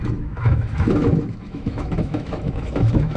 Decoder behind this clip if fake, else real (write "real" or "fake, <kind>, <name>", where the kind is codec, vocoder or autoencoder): fake, autoencoder, DAC-VAE